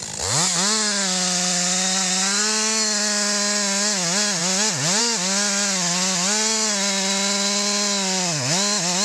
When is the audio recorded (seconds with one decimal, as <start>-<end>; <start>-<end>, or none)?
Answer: 0.0-9.0